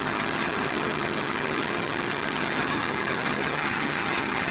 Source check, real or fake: fake